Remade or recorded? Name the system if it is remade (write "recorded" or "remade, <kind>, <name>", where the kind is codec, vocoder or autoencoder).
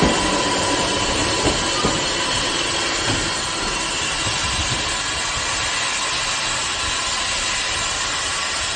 recorded